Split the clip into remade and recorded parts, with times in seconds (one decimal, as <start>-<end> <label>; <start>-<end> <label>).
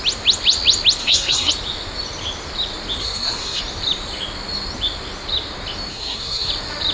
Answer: 0.0-1.0 recorded; 1.0-1.5 remade; 1.5-3.0 recorded; 3.0-3.6 remade; 3.6-5.9 recorded; 5.9-6.5 remade; 6.5-6.9 recorded